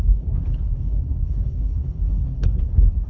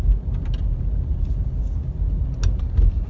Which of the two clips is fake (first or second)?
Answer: first